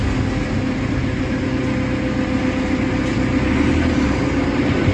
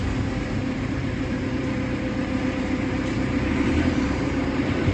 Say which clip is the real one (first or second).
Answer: first